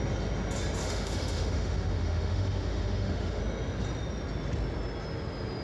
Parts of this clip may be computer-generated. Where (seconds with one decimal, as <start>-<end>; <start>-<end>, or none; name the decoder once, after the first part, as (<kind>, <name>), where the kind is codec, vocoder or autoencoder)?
0.8-3.4 (autoencoder, DAC-VAE)